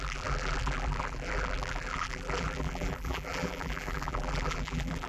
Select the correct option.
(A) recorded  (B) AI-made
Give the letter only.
B